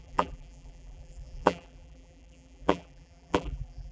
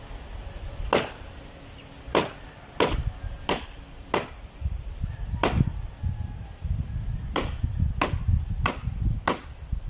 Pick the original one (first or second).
second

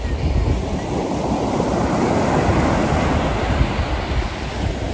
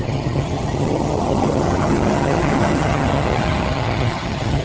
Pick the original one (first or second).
first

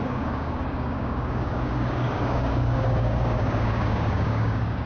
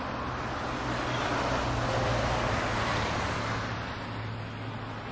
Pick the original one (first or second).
second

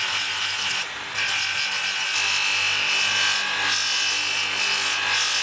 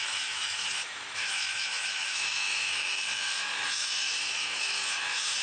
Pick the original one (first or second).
first